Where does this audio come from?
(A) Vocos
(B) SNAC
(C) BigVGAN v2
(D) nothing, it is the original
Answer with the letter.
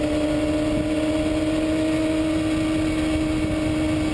D